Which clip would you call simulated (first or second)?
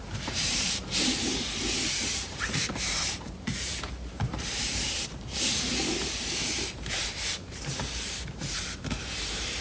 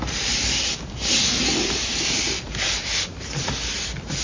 first